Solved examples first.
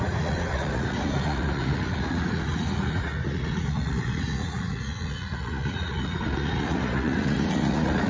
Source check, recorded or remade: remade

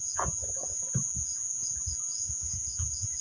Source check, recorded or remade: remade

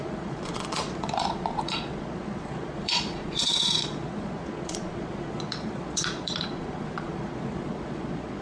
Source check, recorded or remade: remade